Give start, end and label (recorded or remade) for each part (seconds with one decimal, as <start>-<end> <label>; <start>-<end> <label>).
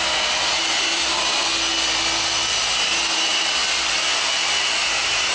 0.0-1.4 remade; 1.4-2.6 recorded; 2.6-3.6 remade; 3.6-4.8 recorded; 4.8-5.3 remade